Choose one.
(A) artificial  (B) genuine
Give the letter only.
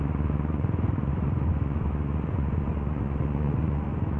A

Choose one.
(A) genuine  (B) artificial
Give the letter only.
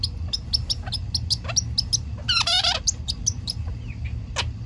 A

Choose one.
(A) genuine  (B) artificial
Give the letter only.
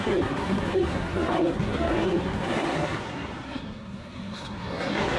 B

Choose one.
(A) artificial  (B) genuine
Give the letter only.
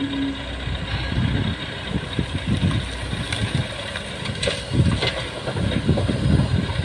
B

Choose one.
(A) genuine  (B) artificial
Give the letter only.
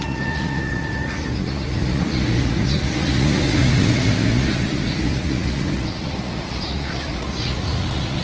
B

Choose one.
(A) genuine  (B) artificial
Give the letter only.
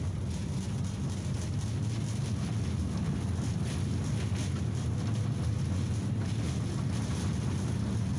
A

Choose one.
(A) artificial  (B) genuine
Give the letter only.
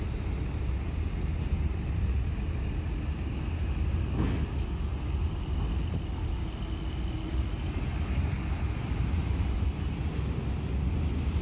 B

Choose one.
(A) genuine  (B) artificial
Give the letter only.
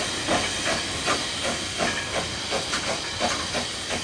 A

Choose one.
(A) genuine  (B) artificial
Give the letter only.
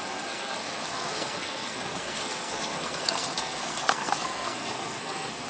B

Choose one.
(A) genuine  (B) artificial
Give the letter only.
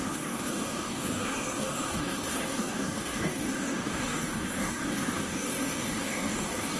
B